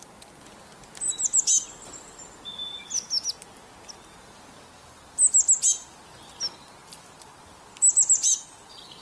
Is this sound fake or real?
real